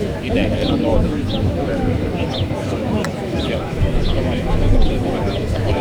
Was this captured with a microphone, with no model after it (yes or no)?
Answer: no